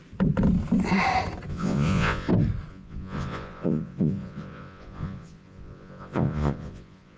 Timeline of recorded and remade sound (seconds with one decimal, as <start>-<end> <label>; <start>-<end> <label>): 0.0-1.5 recorded; 1.5-2.3 remade; 2.3-2.7 recorded; 2.7-7.2 remade